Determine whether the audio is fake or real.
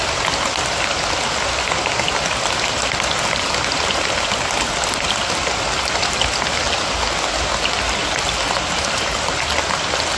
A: real